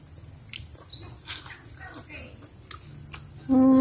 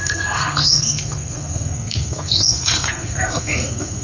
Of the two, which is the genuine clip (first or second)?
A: first